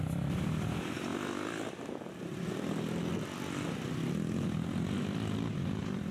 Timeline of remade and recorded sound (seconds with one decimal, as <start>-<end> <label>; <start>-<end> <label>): 0.0-6.1 recorded